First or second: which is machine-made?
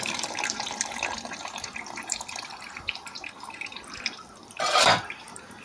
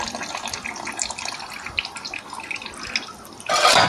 first